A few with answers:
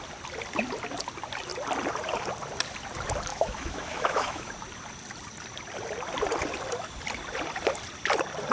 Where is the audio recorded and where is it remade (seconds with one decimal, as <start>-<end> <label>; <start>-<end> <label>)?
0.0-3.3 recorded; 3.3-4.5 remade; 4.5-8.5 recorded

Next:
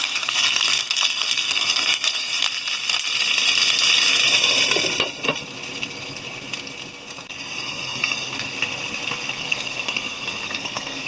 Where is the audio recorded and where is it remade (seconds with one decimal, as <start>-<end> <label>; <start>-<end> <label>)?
0.0-2.3 remade; 2.3-7.6 recorded; 7.6-8.5 remade; 8.5-9.4 recorded; 9.4-11.1 remade

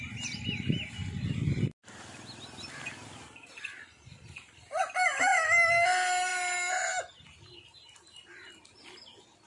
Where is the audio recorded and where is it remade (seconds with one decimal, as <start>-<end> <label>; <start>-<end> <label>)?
0.0-9.5 recorded

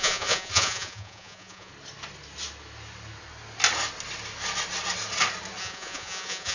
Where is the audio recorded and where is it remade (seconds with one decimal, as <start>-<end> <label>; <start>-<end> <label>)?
0.0-1.7 remade; 1.7-5.6 recorded; 5.6-6.5 remade

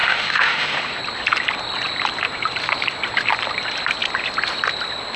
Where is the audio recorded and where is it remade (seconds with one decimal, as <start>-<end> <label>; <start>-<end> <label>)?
0.0-1.0 remade; 1.0-5.2 recorded

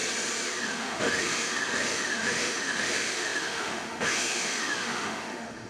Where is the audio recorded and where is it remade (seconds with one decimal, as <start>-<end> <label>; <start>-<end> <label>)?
0.0-0.6 recorded; 0.6-5.7 remade

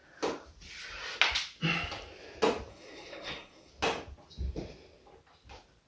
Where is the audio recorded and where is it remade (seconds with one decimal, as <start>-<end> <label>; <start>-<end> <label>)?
0.0-2.7 recorded; 2.7-3.7 remade; 3.7-5.9 recorded